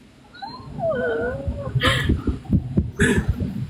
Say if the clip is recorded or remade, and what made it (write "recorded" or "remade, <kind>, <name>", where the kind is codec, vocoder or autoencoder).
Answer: recorded